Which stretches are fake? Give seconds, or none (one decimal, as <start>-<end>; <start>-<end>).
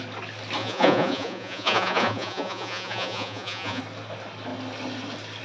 0.6-3.8